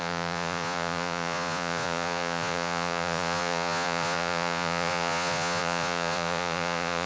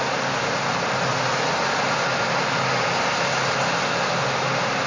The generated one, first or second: first